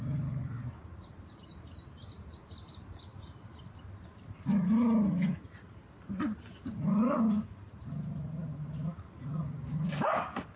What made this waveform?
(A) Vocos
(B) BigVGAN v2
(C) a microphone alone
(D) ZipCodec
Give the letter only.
C